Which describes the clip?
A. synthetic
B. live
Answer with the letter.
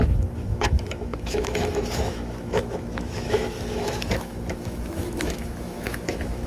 A